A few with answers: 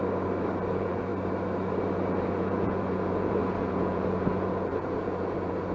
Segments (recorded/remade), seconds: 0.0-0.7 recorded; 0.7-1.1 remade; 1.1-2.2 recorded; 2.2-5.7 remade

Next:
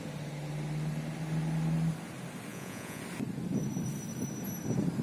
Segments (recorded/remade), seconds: 0.0-2.5 recorded; 2.5-3.0 remade; 3.0-5.0 recorded